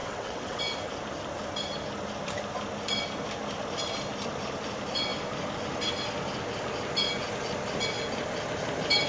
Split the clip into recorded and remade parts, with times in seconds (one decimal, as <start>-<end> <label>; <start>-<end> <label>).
0.0-0.6 remade; 0.6-9.1 recorded